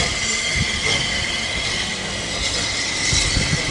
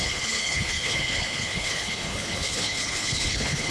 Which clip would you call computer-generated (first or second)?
second